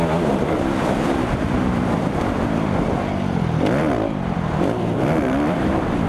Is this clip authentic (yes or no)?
no